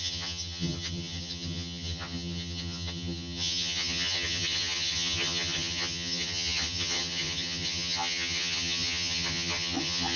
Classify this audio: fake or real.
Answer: fake